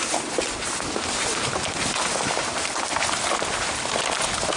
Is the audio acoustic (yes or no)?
yes